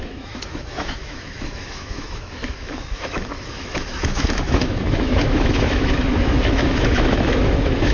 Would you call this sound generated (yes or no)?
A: yes